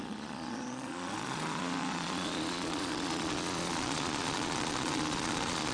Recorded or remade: remade